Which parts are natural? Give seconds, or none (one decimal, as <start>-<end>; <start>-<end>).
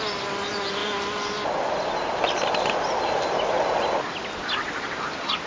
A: 0.0-5.5